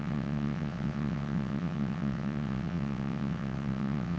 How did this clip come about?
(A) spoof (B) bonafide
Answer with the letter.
A